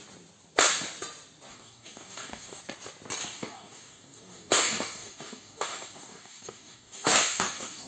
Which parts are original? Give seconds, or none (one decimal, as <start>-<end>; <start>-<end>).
0.0-1.5; 2.6-3.2